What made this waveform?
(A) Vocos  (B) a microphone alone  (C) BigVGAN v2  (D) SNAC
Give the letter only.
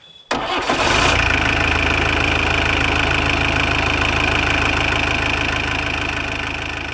B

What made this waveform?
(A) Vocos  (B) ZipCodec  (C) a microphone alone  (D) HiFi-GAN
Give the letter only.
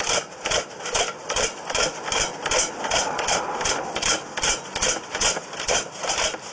C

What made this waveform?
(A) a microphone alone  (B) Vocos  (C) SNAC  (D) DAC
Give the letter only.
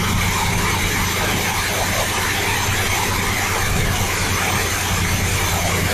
A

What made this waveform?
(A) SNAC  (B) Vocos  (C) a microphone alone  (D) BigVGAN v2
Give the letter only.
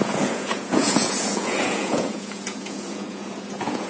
B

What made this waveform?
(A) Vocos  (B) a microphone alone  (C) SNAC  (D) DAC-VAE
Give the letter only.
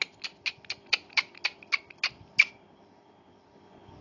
B